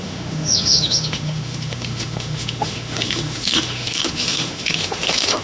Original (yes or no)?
no